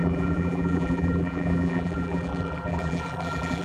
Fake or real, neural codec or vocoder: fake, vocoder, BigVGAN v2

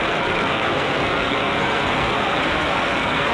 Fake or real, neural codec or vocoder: fake, codec, SNAC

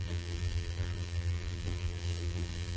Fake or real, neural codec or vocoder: fake, vocoder, BigVGAN v2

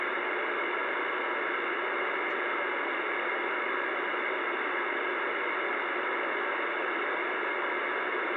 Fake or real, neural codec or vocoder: fake, vocoder, BigVGAN v2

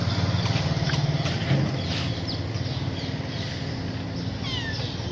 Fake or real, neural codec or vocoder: real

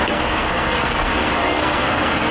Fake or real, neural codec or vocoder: fake, codec, SNAC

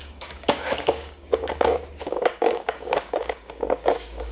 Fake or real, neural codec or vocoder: fake, codec, DAC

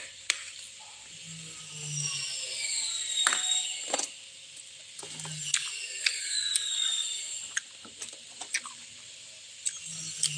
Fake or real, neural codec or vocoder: real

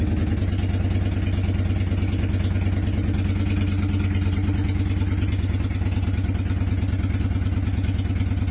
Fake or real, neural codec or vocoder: real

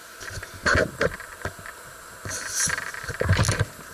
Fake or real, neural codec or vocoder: real